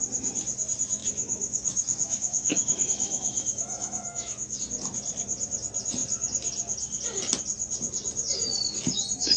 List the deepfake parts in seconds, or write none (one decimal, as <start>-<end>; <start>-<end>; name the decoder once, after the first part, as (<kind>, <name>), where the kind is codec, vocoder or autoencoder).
1.0-4.6 (autoencoder, DAC-VAE)